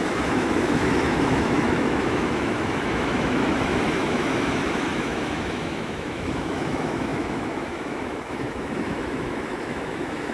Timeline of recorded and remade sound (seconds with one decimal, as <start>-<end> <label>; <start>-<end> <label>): 0.0-10.3 remade